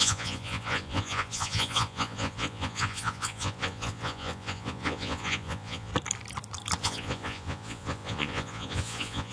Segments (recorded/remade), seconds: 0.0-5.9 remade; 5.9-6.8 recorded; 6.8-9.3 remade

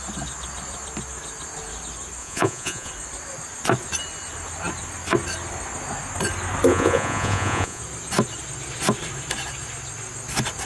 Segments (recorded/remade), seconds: 0.0-2.2 recorded; 2.2-2.9 remade; 2.9-6.7 recorded; 6.7-7.8 remade; 7.8-10.7 recorded

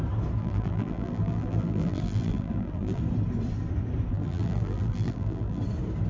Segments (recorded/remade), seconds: 0.0-0.4 recorded; 0.4-3.0 remade; 3.0-4.1 recorded; 4.1-5.6 remade; 5.6-6.1 recorded

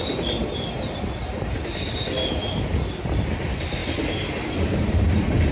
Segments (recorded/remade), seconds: 0.0-3.3 recorded; 3.3-5.5 remade

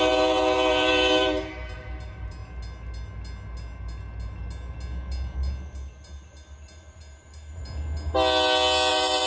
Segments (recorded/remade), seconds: 0.0-2.4 remade; 2.4-5.9 recorded; 5.9-7.6 remade; 7.6-8.9 recorded; 8.9-9.3 remade

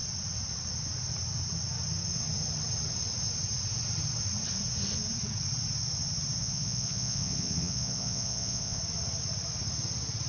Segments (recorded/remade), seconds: 0.0-6.4 recorded; 6.4-8.8 remade; 8.8-10.3 recorded

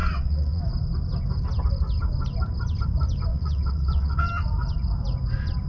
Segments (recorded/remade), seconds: 0.0-0.6 remade; 0.6-3.3 recorded; 3.3-4.3 remade; 4.3-5.7 recorded

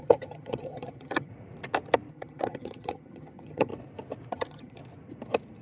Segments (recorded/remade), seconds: 0.0-1.3 remade; 1.3-2.1 recorded; 2.1-3.7 remade; 3.7-4.3 recorded; 4.3-4.8 remade; 4.8-5.6 recorded